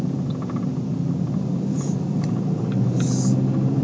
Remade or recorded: recorded